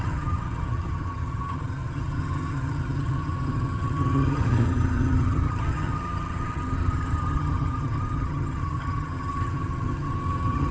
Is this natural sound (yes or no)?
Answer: no